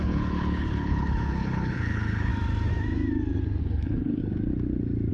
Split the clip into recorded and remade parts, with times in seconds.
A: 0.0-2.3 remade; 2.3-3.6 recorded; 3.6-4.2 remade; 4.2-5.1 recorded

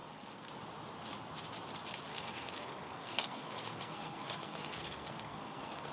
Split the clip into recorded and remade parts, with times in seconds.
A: 0.0-0.5 remade; 0.5-2.1 recorded; 2.1-5.9 remade